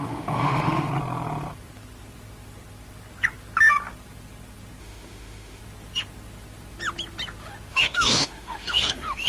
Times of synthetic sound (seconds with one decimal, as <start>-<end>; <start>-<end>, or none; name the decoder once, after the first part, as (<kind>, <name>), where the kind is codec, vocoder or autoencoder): 0.0-0.9 (autoencoder, DAC-VAE); 4.8-5.6; 7.7-9.3